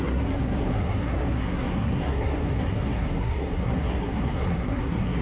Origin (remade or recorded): remade